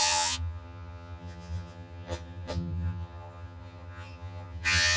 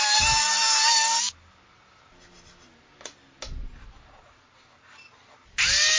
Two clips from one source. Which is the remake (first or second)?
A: first